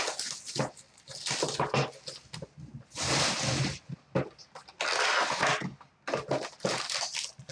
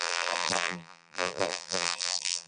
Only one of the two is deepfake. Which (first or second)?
second